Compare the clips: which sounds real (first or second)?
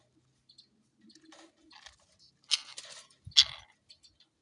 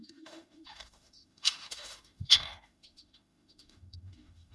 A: first